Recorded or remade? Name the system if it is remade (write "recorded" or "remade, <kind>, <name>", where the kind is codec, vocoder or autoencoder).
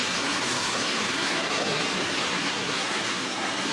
remade, codec, SNAC